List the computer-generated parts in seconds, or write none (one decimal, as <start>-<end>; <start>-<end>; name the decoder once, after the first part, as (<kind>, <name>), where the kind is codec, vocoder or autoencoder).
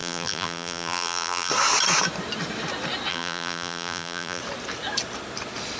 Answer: 0.0-1.5 (vocoder, BigVGAN v2); 3.1-4.4